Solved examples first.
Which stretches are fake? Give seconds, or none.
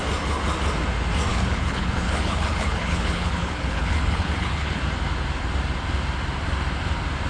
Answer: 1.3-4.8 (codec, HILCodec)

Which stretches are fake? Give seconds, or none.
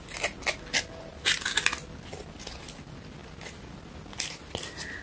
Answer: none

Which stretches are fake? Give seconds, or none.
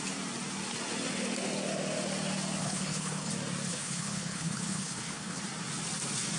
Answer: 2.6-3.3 (codec, HILCodec); 3.7-5.4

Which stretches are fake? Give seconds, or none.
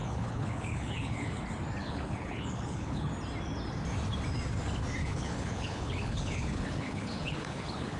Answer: 0.0-1.4 (codec, HILCodec); 1.8-3.1; 5.0-8.0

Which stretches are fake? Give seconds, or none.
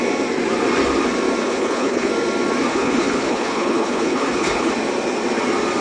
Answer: 1.4-2.1 (codec, HILCodec); 2.7-4.7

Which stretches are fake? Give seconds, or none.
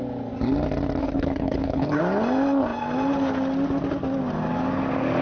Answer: 1.0-2.0 (codec, HILCodec)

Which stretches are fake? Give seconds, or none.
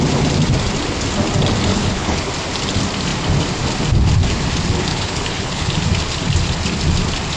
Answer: 1.7-2.3 (codec, HILCodec); 4.9-5.7